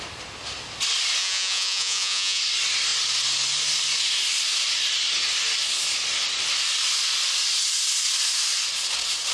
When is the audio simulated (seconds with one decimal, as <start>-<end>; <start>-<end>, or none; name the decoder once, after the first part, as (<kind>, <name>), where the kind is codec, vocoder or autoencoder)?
1.2-2.4 (vocoder, Vocos)